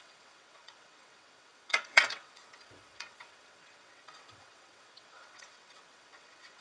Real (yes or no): no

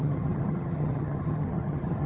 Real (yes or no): no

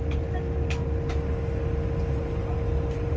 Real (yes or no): yes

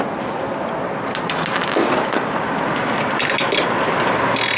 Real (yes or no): yes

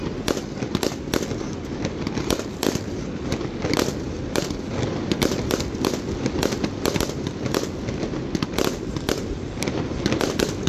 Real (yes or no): yes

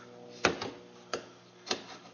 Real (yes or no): yes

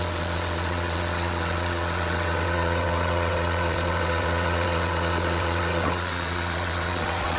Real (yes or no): no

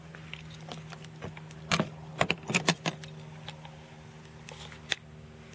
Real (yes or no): yes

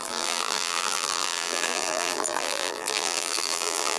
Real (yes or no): no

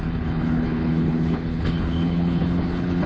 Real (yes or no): no